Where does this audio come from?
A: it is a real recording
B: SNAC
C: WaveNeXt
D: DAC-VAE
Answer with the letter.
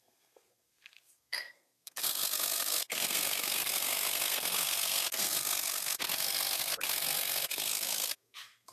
B